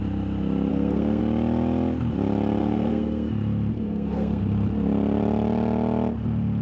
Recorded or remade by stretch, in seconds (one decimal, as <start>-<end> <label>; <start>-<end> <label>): 0.0-0.7 recorded; 0.7-1.2 remade; 1.2-2.6 recorded; 2.6-3.3 remade; 3.3-3.7 recorded; 3.7-4.4 remade; 4.4-6.6 recorded